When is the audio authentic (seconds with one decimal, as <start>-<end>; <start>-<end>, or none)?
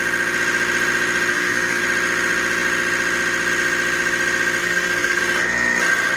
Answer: 0.0-1.3; 1.8-4.6; 5.2-6.2